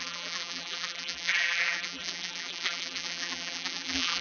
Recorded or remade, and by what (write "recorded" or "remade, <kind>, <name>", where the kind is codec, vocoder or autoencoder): remade, vocoder, BigVGAN v2